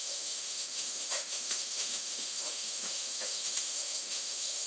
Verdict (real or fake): fake